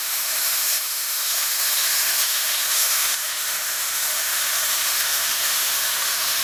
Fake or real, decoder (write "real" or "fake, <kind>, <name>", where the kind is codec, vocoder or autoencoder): fake, autoencoder, DAC-VAE